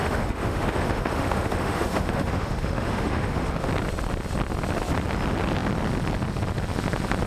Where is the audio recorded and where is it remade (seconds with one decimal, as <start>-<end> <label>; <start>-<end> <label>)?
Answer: 0.0-3.7 remade; 3.7-7.3 recorded